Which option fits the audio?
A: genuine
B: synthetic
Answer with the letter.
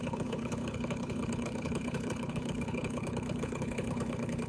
B